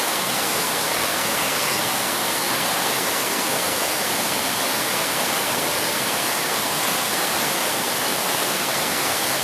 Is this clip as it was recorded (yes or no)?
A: no